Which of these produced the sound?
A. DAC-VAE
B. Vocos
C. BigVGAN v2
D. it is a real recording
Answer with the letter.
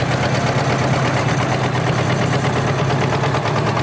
D